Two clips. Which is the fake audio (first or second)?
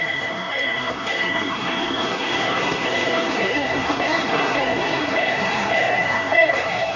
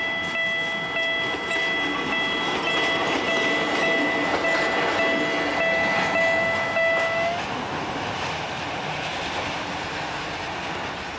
first